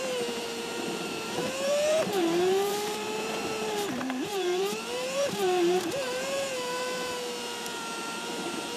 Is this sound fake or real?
fake